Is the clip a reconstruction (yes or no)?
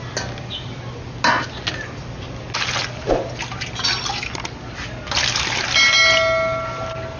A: no